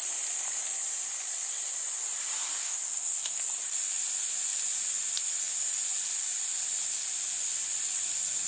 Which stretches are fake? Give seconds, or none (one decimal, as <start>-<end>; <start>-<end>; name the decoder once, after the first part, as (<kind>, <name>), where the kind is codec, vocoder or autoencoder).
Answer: 2.6-3.4 (codec, SNAC)